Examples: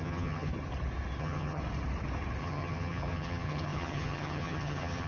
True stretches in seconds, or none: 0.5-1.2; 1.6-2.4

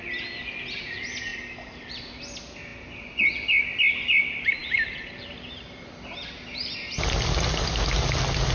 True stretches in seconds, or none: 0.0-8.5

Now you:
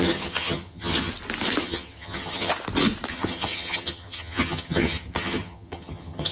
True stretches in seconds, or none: 1.1-1.6; 2.5-3.1

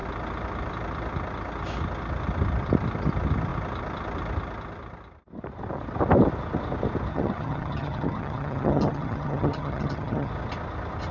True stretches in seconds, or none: 0.0-7.1; 10.3-11.1

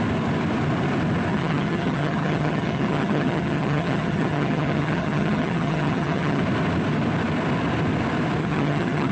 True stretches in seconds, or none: 0.0-1.3; 6.4-8.4